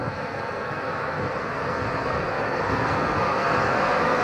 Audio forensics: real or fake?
fake